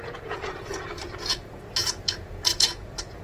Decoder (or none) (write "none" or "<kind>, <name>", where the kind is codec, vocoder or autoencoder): vocoder, Vocos